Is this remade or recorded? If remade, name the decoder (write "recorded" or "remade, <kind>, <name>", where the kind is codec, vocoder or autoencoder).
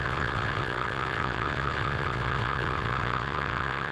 remade, vocoder, WaveNeXt